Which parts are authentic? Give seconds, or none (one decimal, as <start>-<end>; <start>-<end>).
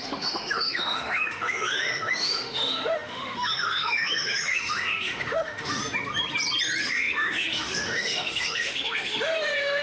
5.8-6.8